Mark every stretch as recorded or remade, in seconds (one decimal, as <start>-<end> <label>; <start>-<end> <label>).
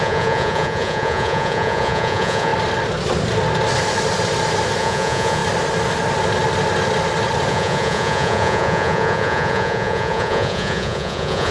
0.0-2.5 remade; 2.5-4.8 recorded; 4.8-5.4 remade; 5.4-7.5 recorded; 7.5-11.5 remade